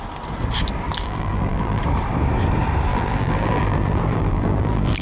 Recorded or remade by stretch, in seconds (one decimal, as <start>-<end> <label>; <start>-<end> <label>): 0.0-1.0 recorded; 1.0-1.8 remade; 1.8-2.9 recorded; 2.9-5.0 remade